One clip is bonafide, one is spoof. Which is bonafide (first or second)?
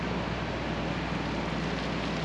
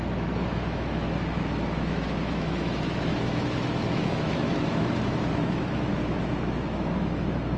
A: first